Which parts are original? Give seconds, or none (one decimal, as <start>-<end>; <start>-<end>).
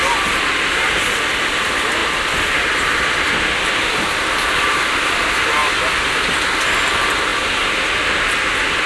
0.0-2.0; 5.1-8.9